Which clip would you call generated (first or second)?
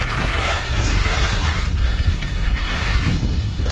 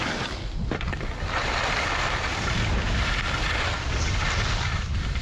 first